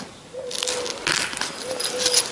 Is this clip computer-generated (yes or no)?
no